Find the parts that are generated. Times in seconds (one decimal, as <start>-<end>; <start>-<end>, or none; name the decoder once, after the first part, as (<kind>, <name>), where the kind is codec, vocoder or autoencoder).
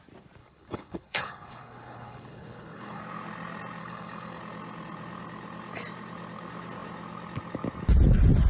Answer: 0.4-3.0 (codec, HILCodec); 3.8-4.4